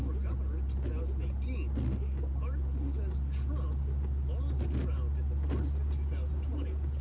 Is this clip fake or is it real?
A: real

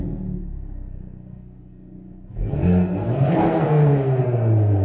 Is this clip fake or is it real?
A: fake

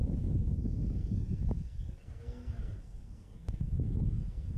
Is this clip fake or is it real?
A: fake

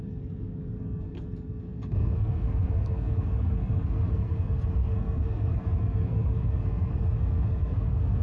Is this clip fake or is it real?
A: fake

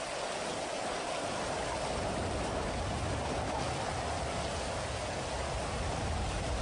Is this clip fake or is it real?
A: real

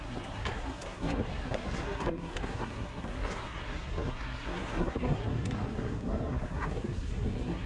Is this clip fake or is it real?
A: fake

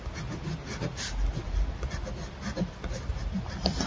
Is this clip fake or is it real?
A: real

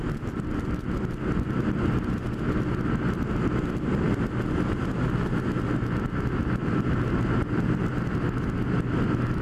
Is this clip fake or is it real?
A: real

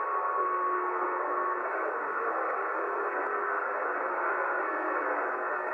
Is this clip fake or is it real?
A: fake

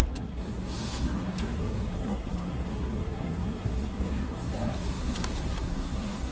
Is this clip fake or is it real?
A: fake